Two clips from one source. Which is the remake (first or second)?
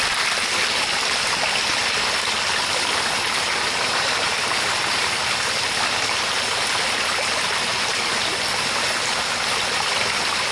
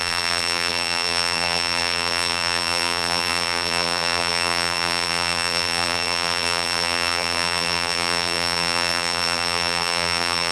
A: second